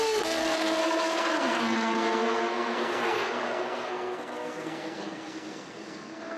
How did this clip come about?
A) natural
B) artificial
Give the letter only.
B